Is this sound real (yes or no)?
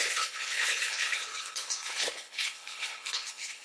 no